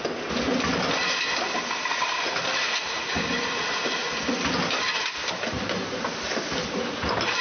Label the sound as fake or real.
real